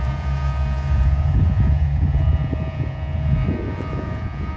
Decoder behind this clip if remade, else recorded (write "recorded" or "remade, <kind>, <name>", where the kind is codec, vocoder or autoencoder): remade, vocoder, Vocos